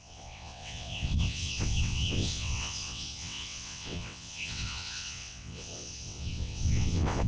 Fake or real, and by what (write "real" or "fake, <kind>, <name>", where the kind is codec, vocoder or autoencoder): fake, vocoder, WaveNeXt